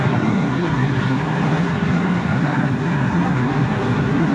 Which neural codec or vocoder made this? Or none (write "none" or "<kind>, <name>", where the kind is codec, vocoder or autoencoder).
codec, SNAC